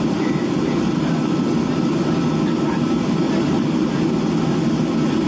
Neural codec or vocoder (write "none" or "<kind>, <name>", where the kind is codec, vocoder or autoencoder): none